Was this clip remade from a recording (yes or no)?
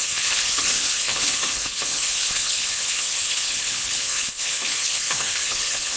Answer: yes